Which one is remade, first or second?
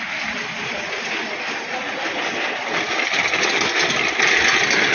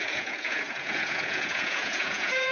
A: second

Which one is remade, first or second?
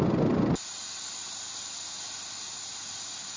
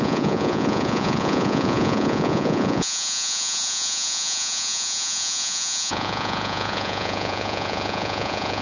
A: second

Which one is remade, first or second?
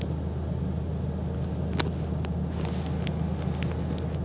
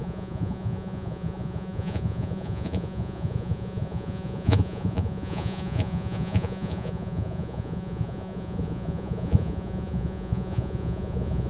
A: second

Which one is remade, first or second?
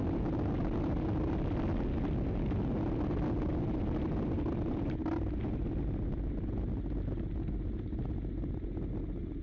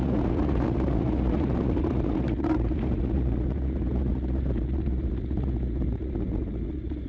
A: second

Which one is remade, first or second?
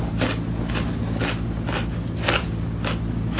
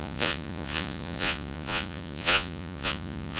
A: second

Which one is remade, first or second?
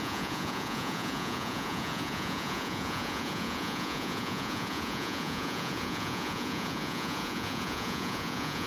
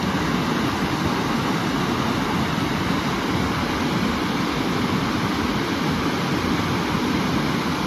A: first